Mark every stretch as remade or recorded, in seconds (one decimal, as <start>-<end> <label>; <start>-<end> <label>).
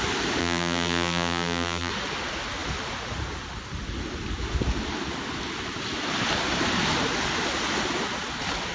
0.0-0.4 recorded; 0.4-1.9 remade; 1.9-8.7 recorded